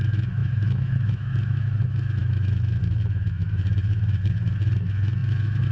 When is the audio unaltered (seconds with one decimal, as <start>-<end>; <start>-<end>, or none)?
none